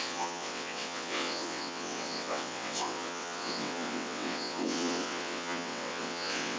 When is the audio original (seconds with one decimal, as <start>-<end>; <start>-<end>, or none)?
none